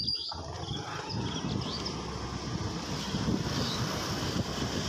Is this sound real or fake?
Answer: real